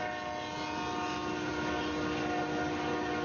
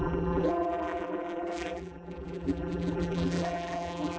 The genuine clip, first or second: first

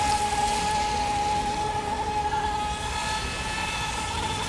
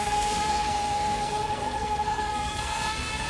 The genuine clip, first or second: first